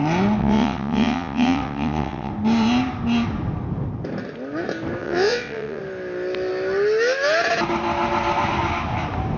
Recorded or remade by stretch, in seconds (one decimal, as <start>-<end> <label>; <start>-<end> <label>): 0.0-0.4 recorded; 0.4-2.3 remade; 2.3-5.0 recorded; 5.0-5.8 remade; 5.8-9.4 recorded